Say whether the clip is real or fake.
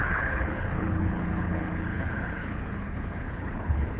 fake